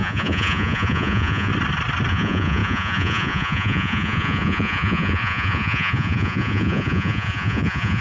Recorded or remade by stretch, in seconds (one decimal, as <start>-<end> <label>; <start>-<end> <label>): 0.0-1.5 remade; 1.5-2.1 recorded; 2.1-8.0 remade